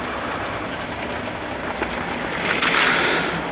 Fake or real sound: real